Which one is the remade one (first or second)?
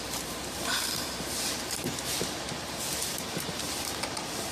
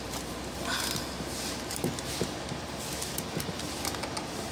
first